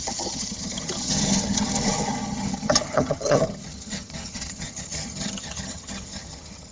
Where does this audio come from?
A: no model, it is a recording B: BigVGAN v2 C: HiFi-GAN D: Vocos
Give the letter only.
C